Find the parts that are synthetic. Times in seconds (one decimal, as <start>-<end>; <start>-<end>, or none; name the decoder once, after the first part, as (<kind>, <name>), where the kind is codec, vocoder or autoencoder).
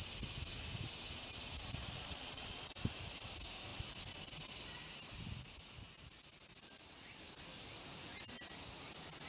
1.8-2.6 (vocoder, WaveNeXt)